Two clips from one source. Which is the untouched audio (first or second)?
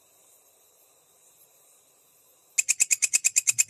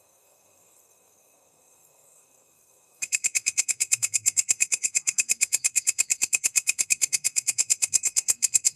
first